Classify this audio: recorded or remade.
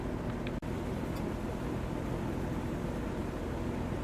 recorded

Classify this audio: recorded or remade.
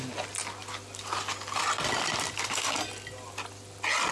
recorded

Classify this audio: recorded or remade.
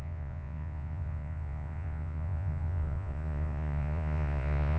remade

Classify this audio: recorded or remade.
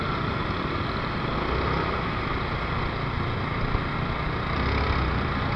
recorded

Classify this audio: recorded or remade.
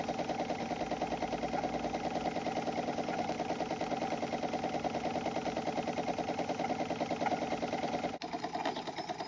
recorded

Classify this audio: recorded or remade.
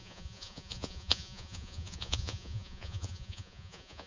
remade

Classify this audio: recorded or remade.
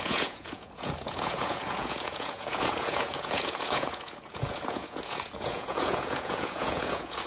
remade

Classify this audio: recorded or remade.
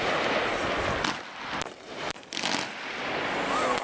recorded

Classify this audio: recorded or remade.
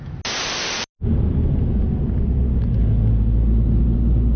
recorded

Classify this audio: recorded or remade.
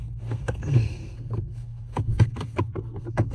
remade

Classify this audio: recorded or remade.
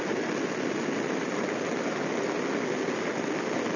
recorded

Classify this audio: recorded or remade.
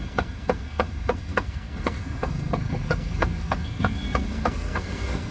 remade